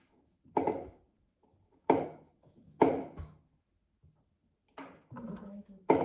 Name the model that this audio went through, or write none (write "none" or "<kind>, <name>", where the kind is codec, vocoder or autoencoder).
autoencoder, DAC-VAE